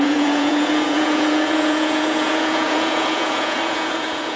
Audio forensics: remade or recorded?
remade